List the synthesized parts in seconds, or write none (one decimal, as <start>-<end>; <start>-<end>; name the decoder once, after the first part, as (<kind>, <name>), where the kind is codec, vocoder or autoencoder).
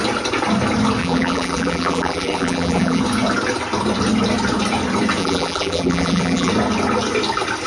1.0-3.0 (vocoder, BigVGAN v2); 5.2-6.5